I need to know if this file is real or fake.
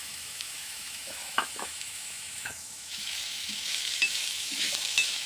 fake